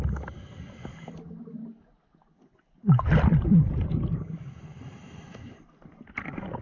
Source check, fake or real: real